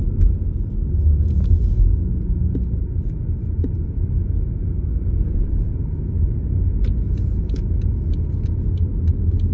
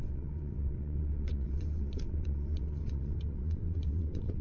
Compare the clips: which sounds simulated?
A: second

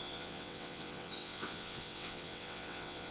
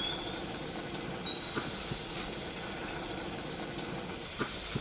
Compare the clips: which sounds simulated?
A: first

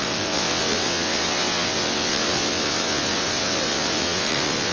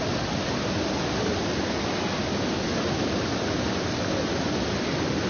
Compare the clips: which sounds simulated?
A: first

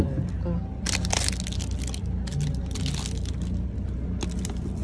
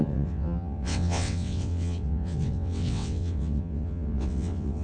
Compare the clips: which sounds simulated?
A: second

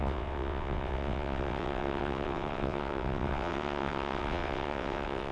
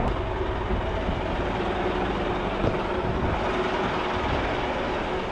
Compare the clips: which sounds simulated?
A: first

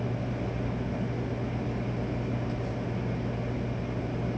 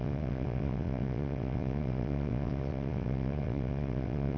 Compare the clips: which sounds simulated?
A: second